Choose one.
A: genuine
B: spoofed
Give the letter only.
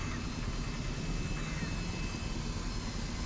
A